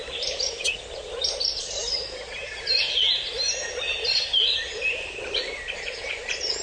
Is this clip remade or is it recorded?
recorded